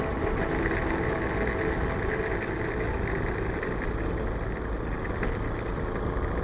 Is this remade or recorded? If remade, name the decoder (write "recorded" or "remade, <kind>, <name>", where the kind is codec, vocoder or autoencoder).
recorded